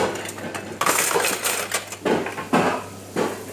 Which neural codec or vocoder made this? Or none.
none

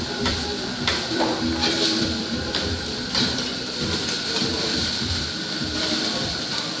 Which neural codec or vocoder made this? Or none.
vocoder, BigVGAN v2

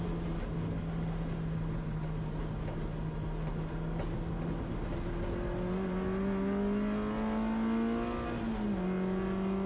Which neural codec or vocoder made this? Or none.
none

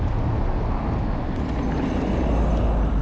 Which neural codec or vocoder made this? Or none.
none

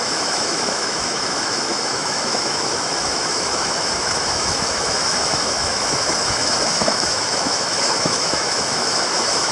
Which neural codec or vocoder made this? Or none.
autoencoder, DAC-VAE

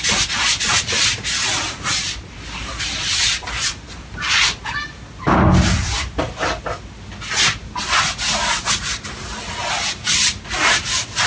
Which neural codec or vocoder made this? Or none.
none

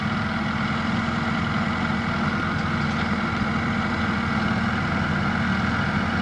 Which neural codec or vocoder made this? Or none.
none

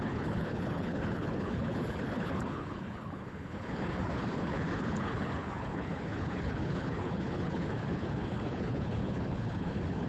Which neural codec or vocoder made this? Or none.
codec, HILCodec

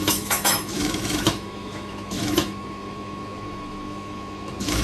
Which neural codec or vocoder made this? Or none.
autoencoder, DAC-VAE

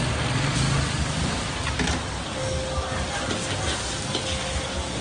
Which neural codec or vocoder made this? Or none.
none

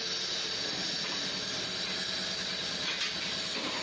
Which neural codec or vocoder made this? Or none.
none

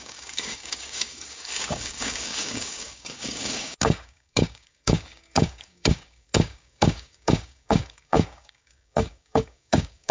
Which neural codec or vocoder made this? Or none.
codec, DAC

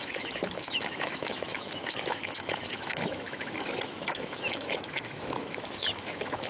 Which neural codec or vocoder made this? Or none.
autoencoder, DAC-VAE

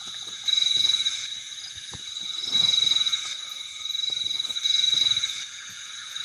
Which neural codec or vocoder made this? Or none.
vocoder, Vocos